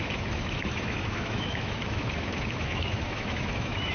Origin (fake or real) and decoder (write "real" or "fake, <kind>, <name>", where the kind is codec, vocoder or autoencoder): fake, autoencoder, DAC-VAE